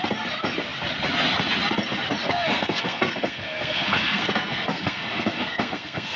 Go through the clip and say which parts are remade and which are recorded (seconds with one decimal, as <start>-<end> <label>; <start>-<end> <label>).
0.0-2.2 recorded; 2.2-6.2 remade